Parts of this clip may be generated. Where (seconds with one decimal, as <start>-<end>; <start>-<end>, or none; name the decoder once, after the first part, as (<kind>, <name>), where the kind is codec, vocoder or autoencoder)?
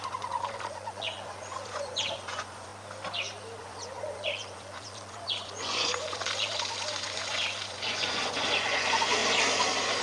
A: 0.0-2.7 (vocoder, Vocos); 3.6-9.2